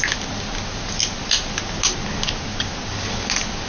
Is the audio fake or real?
real